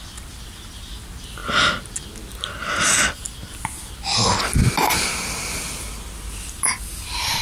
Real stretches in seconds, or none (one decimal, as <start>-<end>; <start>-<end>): 0.0-7.4